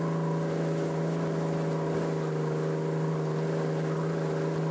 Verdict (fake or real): real